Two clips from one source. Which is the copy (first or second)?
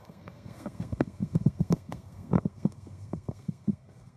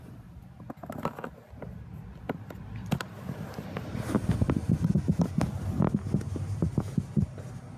first